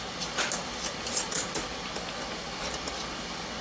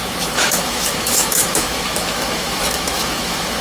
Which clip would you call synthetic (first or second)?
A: second